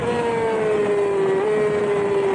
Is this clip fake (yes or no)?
no